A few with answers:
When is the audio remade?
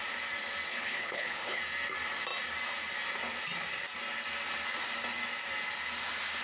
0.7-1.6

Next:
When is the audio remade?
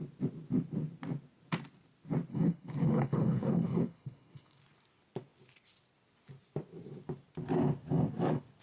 2.3-4.6